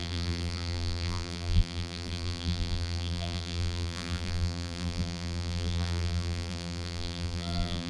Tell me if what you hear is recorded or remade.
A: remade